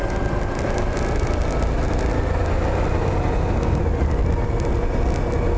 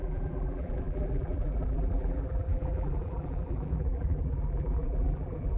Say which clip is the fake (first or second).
second